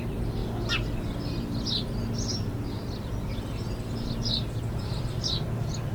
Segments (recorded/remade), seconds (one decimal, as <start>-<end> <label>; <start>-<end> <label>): 0.0-5.9 recorded